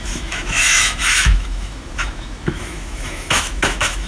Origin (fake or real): fake